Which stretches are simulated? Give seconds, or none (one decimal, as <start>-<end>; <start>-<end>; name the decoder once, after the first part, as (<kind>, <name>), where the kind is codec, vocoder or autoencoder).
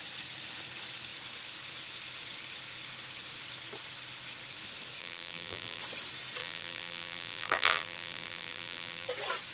5.0-5.8 (vocoder, BigVGAN v2); 6.4-9.1